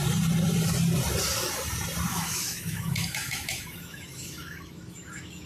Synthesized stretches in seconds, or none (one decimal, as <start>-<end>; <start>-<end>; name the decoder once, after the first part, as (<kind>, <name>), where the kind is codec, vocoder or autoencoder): 2.1-5.5 (autoencoder, DAC-VAE)